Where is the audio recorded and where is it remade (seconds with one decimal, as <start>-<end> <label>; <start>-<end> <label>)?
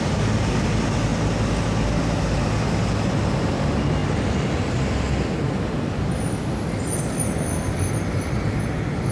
0.0-9.1 recorded